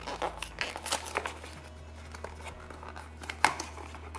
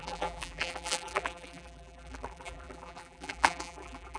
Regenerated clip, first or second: second